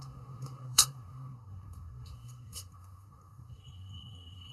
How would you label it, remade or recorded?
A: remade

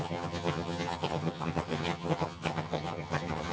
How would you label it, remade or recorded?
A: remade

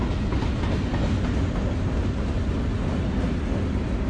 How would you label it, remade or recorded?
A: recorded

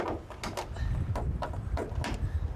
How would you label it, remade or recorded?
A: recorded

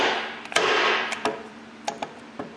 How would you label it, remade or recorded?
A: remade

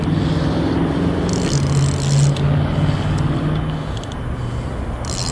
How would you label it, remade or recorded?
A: recorded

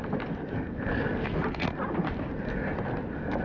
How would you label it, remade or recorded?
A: recorded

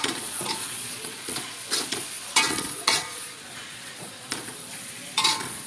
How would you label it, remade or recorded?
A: remade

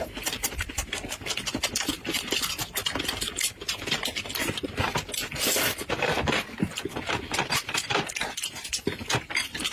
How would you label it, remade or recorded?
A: recorded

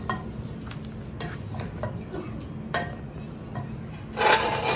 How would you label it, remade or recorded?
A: recorded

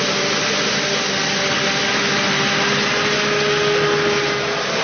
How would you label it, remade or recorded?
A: recorded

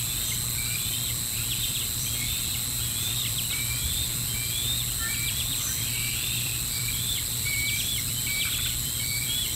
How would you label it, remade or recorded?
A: remade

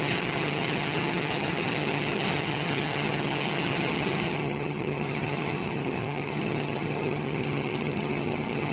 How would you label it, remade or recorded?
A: remade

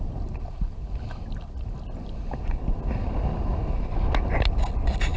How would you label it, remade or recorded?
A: recorded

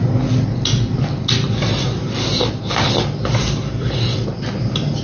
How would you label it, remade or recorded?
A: recorded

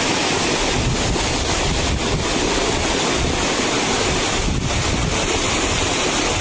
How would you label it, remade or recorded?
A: recorded